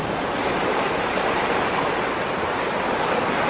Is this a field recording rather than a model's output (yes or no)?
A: yes